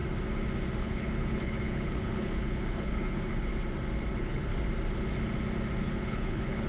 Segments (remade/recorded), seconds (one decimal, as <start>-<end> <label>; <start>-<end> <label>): 0.0-0.8 recorded; 0.8-3.5 remade; 3.5-4.1 recorded; 4.1-4.5 remade; 4.5-5.8 recorded; 5.8-6.7 remade